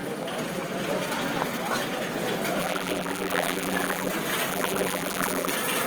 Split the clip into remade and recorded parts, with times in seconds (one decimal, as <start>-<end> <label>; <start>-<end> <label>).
0.0-2.6 recorded; 2.6-4.1 remade; 4.1-4.5 recorded; 4.5-5.5 remade; 5.5-5.9 recorded